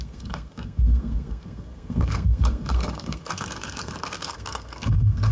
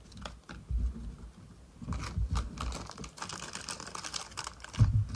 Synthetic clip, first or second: first